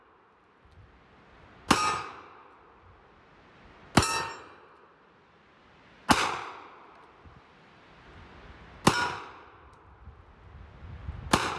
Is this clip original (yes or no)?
yes